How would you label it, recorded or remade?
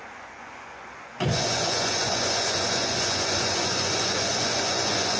remade